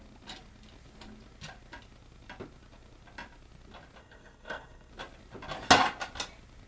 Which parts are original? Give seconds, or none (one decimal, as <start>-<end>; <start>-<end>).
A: 0.0-4.0; 4.9-6.7